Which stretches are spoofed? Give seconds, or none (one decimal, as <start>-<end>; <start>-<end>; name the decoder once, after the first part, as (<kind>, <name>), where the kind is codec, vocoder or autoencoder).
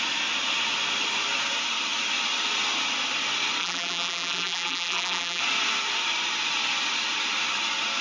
3.6-5.4 (vocoder, BigVGAN v2)